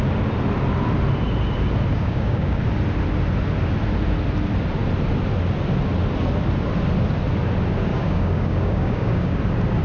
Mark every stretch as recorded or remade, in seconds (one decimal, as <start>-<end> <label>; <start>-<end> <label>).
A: 0.0-1.9 recorded; 1.9-2.6 remade; 2.6-7.9 recorded; 7.9-9.4 remade; 9.4-9.8 recorded